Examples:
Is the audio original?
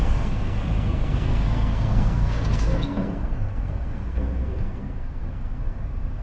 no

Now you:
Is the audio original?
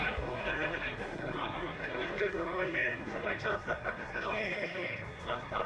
no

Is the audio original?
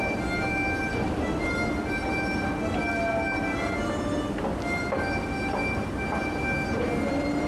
yes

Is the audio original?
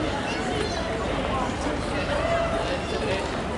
yes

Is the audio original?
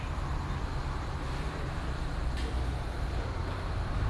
yes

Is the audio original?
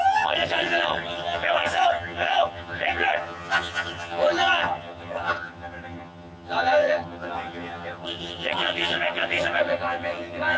no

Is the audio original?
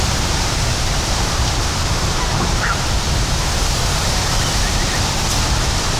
no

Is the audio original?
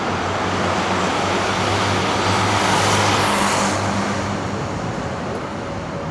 yes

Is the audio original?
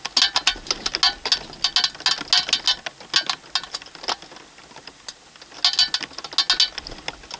yes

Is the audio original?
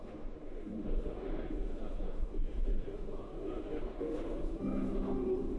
no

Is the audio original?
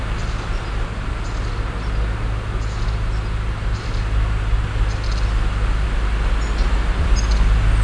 yes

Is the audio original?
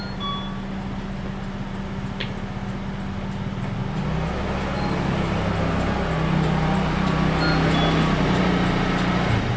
yes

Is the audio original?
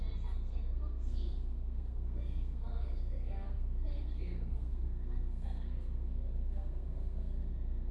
no